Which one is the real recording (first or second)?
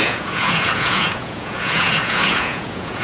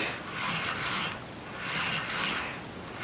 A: second